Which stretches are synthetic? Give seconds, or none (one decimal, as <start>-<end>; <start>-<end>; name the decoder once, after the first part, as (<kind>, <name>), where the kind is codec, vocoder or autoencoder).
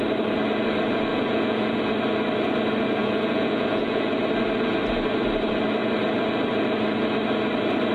1.1-1.8 (vocoder, Vocos); 3.0-4.1